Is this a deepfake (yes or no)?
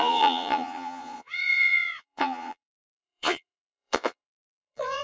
yes